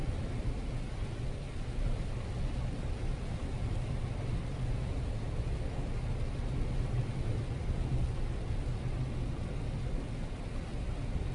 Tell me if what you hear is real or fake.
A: real